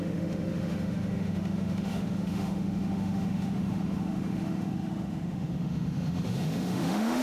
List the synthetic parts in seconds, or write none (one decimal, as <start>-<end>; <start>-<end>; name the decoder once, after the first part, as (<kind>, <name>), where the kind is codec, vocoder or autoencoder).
0.0-7.2 (autoencoder, DAC-VAE)

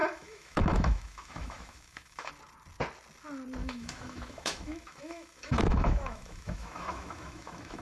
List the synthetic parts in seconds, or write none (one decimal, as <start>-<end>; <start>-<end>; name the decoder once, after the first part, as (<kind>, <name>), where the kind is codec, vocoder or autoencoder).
0.0-2.3 (autoencoder, DAC-VAE); 3.6-7.8

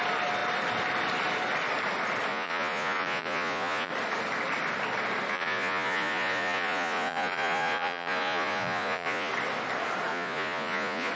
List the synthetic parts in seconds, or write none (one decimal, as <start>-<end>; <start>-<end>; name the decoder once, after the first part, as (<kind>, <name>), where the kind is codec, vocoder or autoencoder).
2.3-3.9 (vocoder, Vocos); 5.3-9.3; 10.1-11.1

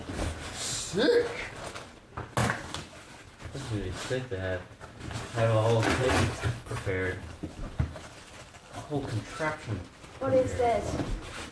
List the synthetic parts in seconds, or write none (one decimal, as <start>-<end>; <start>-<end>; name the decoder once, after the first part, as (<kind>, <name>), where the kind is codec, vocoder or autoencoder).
6.0-6.8 (vocoder, Vocos)

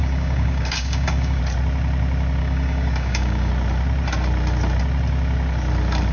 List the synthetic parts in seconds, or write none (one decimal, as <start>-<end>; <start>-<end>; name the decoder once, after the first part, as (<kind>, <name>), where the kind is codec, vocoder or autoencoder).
0.0-1.4 (codec, DAC); 2.4-3.5

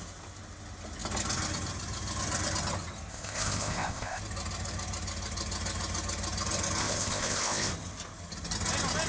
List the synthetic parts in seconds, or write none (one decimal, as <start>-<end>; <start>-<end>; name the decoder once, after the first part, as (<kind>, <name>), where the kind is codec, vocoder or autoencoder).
3.1-4.2 (codec, ZipCodec); 6.8-7.7